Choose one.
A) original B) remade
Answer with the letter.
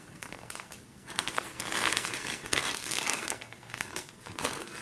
B